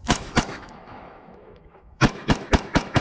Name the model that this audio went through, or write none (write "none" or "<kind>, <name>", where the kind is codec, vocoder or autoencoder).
autoencoder, DAC-VAE